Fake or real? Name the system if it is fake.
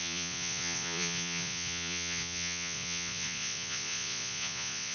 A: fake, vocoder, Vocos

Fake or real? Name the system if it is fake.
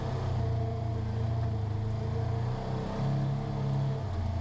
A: real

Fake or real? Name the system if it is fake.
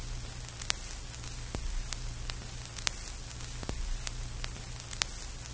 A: real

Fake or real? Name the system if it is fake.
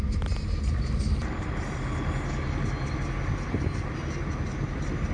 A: real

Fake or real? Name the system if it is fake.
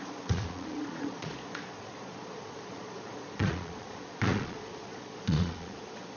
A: fake, vocoder, Vocos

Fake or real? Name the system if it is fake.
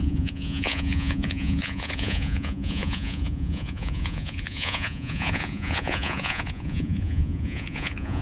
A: fake, vocoder, Vocos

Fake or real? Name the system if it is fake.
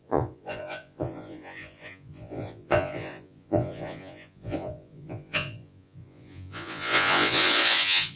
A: fake, vocoder, Vocos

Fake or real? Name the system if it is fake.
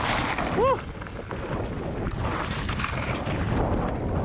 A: real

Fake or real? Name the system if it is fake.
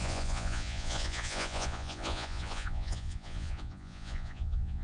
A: fake, vocoder, Vocos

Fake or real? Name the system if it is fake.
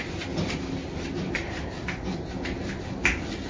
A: real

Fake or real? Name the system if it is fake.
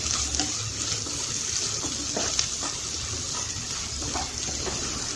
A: real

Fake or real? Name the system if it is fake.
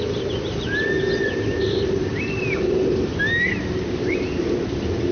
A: real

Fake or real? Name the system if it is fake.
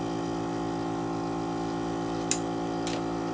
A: real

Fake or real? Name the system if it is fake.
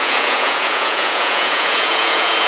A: fake, vocoder, Vocos